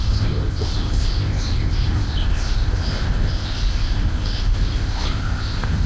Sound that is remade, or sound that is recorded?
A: remade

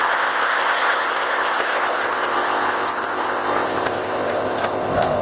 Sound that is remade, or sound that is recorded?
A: remade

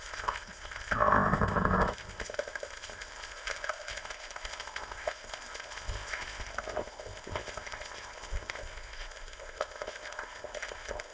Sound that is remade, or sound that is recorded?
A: remade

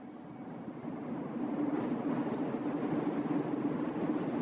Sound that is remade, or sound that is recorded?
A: recorded